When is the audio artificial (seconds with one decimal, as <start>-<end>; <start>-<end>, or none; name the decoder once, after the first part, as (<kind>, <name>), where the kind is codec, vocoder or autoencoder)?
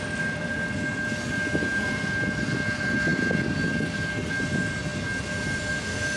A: none